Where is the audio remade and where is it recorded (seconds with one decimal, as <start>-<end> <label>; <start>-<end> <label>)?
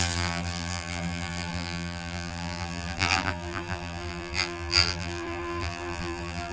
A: 0.0-6.5 remade